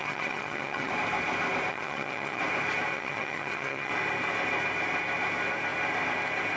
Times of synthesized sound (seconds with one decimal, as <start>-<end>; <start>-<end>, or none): 0.0-0.9; 1.7-2.4; 2.9-3.9